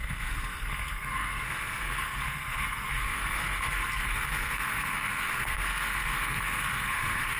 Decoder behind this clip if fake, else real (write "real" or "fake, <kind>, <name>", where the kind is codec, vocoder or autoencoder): fake, codec, SNAC